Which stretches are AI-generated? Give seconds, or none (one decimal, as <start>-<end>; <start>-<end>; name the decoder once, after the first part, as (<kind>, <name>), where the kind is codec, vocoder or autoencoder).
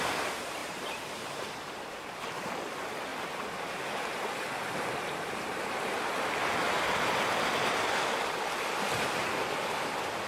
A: 0.6-1.9 (vocoder, BigVGAN v2); 3.1-4.3